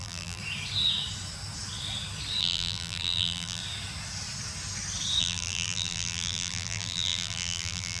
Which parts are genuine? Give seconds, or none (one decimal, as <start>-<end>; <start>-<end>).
0.4-2.4; 3.6-5.2